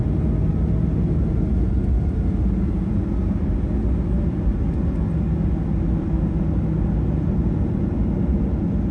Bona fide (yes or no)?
yes